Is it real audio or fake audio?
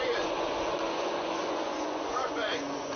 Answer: fake